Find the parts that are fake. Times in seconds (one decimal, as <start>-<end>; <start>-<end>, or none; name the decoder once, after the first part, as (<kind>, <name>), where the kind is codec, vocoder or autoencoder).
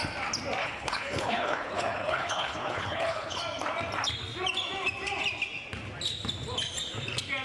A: 0.6-3.4 (codec, HILCodec)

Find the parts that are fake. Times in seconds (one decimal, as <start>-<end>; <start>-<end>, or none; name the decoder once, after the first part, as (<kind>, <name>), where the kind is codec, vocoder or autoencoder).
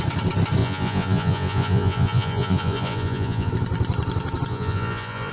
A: 0.6-3.5 (vocoder, Vocos); 4.5-5.3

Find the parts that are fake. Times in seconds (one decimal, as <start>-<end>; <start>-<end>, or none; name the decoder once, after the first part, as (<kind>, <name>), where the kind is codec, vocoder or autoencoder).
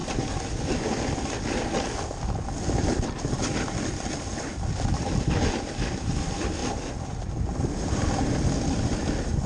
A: none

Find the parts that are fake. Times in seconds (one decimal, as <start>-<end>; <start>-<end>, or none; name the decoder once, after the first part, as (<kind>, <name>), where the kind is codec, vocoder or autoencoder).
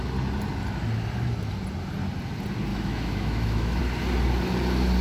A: 2.7-3.8 (autoencoder, DAC-VAE)